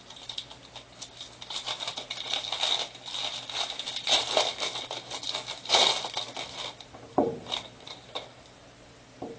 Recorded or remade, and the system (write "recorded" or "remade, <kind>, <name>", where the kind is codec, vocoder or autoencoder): recorded